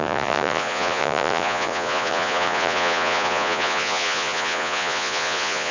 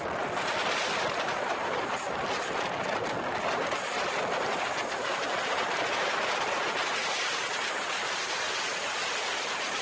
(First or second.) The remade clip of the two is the first